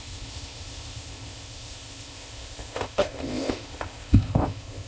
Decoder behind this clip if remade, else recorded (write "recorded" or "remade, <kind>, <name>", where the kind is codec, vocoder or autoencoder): remade, codec, ZipCodec